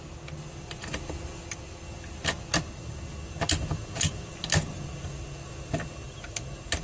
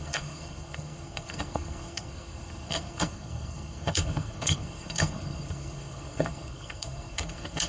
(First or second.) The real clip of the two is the first